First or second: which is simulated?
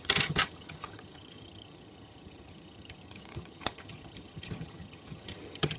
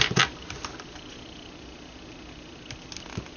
first